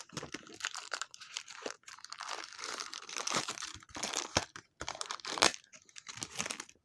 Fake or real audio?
fake